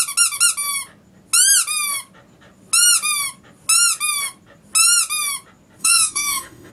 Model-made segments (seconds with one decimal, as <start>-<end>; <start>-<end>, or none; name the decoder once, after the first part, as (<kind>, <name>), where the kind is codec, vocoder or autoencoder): 5.8-6.7 (autoencoder, DAC-VAE)

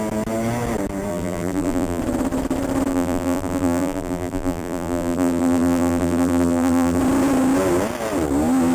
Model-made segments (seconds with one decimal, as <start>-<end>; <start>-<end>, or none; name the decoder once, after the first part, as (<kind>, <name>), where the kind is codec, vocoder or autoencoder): 1.1-2.0 (vocoder, BigVGAN v2); 2.9-7.0

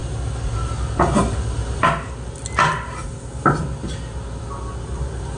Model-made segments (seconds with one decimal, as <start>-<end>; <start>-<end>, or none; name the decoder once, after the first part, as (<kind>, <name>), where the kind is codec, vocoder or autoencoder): none

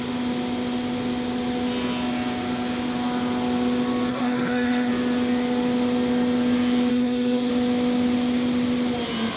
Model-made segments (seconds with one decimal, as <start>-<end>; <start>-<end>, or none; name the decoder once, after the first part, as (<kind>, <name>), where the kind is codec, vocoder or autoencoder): 4.1-4.9 (codec, SNAC); 6.9-7.5

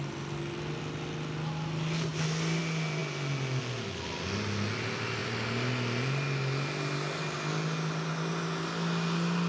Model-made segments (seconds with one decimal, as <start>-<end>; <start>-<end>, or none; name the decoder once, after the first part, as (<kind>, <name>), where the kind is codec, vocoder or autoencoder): none

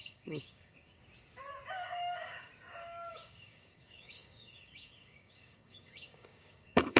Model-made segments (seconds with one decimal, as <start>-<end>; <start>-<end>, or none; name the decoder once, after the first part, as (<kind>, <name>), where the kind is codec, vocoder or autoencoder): 0.0-1.0 (codec, DAC); 1.7-2.5; 3.1-7.0

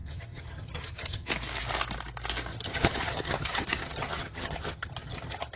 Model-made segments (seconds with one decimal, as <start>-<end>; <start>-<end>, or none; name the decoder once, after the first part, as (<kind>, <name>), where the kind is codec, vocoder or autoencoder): 0.0-1.3 (vocoder, HiFi-GAN); 2.5-5.6

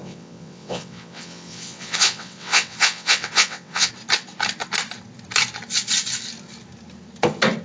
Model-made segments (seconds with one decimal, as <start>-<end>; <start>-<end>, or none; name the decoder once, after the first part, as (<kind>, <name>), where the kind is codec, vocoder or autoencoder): 0.0-3.9 (vocoder, WaveNeXt)